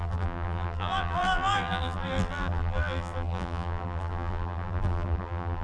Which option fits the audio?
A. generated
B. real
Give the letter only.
A